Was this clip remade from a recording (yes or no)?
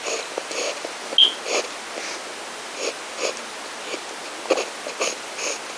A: no